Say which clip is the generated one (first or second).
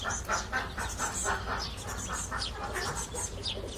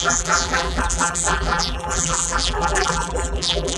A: second